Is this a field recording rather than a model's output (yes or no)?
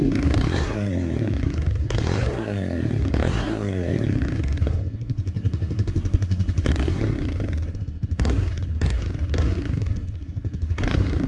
no